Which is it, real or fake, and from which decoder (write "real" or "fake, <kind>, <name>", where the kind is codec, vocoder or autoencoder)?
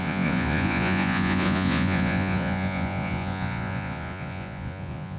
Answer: fake, vocoder, Vocos